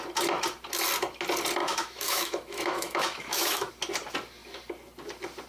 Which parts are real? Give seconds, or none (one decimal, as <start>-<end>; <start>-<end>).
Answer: 0.0-1.6; 3.7-5.5